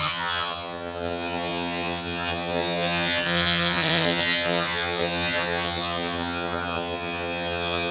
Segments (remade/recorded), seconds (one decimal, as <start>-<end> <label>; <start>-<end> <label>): 0.0-7.9 remade